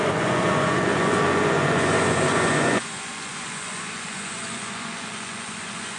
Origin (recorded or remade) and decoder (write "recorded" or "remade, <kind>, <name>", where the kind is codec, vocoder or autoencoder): remade, vocoder, Vocos